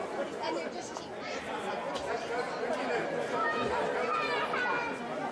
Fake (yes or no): no